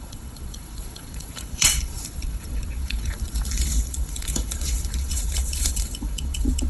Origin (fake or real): fake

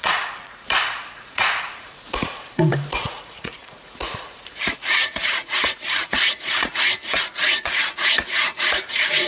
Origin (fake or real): fake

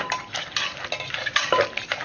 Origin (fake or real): real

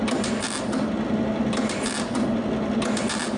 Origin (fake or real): real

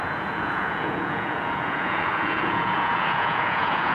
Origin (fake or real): fake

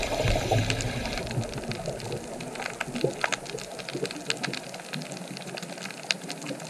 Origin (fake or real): real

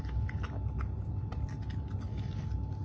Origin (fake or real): real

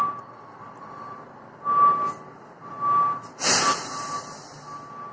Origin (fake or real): real